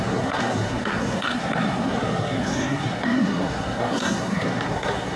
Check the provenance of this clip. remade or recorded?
remade